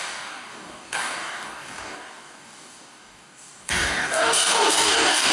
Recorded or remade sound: remade